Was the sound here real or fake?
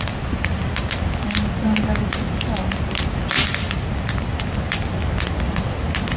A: real